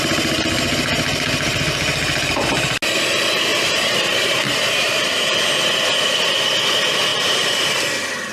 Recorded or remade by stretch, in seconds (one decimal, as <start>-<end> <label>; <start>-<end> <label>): 0.0-3.5 recorded; 3.5-5.0 remade; 5.0-7.1 recorded; 7.1-7.8 remade; 7.8-8.3 recorded